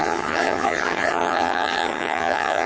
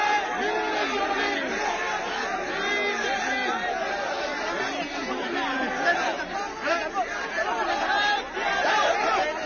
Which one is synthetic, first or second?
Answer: first